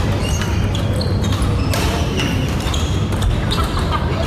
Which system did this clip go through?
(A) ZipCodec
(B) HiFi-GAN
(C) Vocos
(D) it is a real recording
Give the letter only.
D